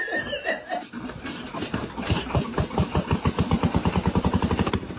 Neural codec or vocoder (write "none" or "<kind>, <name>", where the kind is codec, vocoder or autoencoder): vocoder, BigVGAN v2